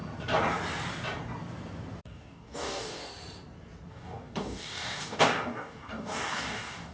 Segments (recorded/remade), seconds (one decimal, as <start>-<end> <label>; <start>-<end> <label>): 0.0-2.0 recorded; 2.0-3.1 remade; 3.1-3.9 recorded; 3.9-6.9 remade